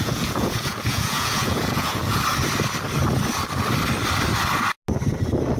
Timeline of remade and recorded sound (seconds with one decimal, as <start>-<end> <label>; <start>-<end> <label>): 0.0-2.0 remade; 2.0-5.6 recorded